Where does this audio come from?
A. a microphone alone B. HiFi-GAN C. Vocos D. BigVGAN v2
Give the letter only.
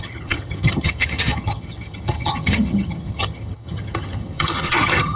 B